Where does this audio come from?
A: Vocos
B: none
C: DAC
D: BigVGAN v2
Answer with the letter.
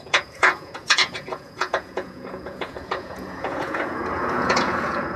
A